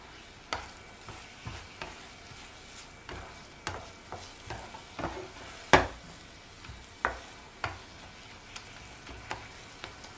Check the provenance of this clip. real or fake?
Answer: real